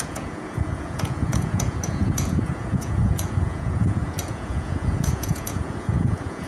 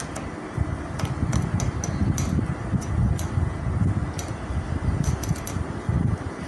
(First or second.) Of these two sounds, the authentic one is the second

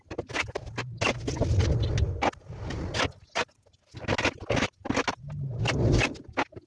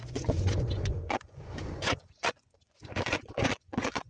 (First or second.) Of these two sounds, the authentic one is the first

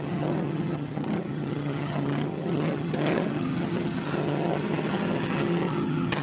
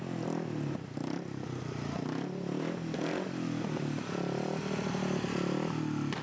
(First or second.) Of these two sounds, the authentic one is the second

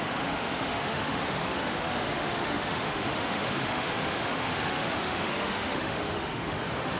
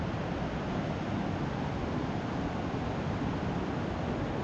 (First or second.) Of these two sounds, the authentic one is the second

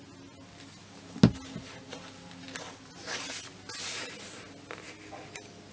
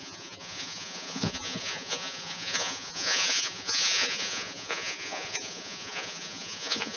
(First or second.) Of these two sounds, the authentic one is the first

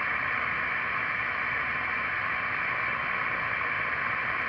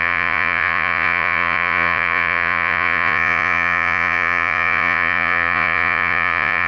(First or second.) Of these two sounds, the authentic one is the first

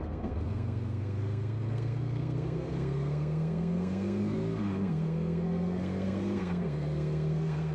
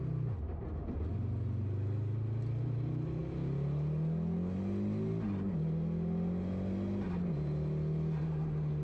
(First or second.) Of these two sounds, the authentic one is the second